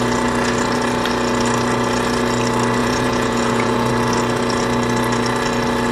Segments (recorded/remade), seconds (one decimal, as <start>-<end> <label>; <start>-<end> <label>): 0.0-2.8 recorded; 2.8-3.9 remade; 3.9-5.9 recorded